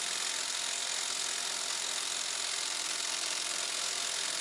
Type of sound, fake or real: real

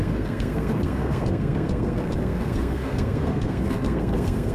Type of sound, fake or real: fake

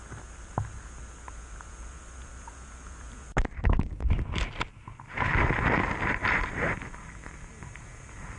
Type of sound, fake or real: real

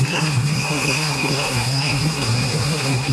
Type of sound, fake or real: fake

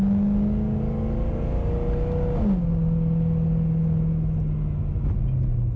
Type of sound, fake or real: real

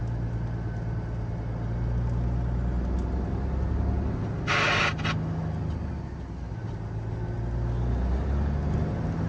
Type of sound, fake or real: real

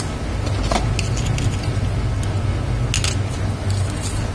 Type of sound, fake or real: real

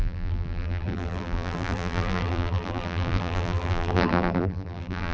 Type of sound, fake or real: fake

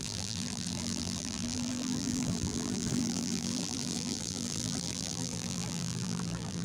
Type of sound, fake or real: fake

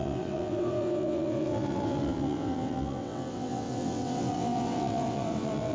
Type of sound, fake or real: fake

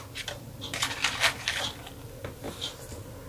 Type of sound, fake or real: real